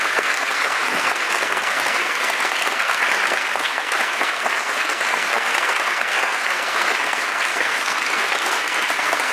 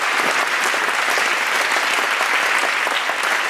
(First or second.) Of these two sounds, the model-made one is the first